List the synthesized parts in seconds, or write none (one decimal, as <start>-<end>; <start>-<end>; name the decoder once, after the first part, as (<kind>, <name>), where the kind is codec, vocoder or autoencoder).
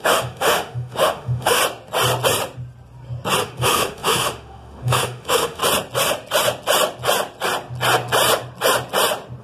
0.0-1.6 (autoencoder, DAC-VAE); 3.4-5.6